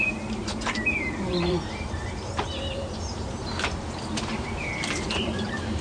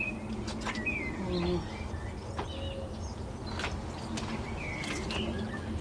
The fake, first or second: first